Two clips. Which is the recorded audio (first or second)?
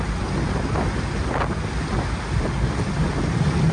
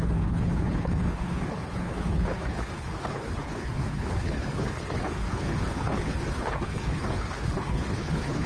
first